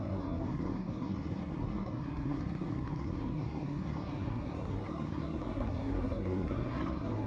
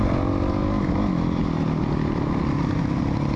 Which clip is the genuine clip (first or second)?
second